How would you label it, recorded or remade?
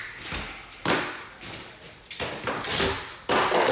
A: recorded